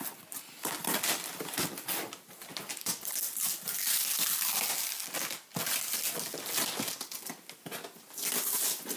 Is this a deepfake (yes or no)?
no